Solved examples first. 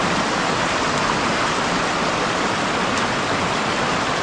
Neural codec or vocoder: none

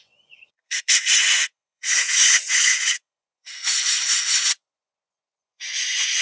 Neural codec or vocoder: vocoder, Vocos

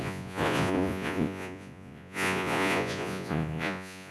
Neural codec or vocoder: vocoder, Vocos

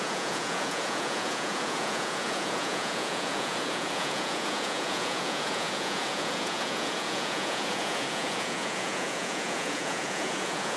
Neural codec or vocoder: vocoder, Vocos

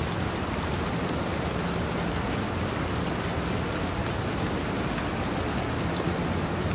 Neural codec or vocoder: none